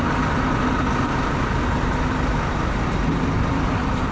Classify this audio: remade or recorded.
recorded